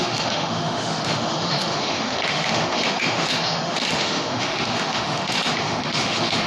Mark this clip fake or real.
fake